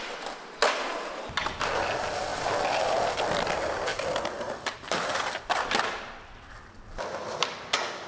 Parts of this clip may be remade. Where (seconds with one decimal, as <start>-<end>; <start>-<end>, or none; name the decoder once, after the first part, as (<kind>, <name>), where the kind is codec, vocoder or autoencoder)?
0.6-1.9 (vocoder, BigVGAN v2); 2.3-3.3; 3.9-5.5